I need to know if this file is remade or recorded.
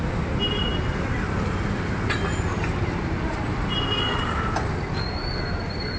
recorded